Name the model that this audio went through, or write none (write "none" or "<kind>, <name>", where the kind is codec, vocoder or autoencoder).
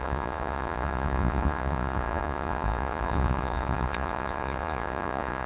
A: vocoder, Vocos